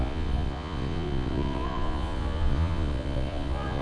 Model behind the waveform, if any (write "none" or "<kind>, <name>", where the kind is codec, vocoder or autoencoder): vocoder, Vocos